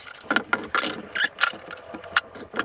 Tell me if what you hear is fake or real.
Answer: real